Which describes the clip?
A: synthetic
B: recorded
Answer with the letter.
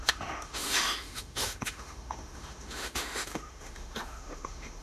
A